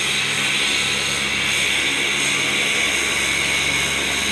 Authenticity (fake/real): real